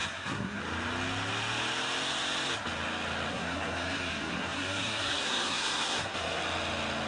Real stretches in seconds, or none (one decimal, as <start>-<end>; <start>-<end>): 0.6-3.3; 6.4-7.1